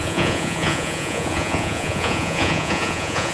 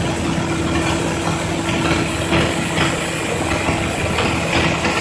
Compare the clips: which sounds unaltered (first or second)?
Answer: second